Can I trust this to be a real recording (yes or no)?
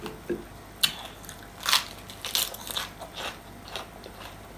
yes